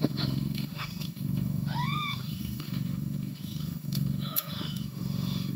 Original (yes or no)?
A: no